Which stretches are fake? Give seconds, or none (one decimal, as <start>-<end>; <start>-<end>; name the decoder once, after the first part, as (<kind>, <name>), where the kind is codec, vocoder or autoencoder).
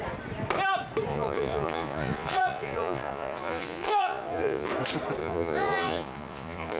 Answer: 1.1-4.7 (vocoder, Vocos); 5.2-6.8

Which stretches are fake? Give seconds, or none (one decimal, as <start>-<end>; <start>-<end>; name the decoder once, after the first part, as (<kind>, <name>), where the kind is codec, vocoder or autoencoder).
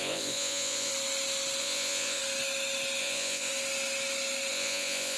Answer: 0.0-0.9 (vocoder, Vocos); 1.6-2.2; 3.0-3.5; 4.5-5.2